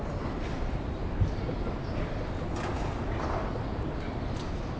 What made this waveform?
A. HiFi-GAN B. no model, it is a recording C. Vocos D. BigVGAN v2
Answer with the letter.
B